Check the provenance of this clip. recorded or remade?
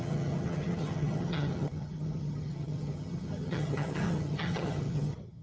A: remade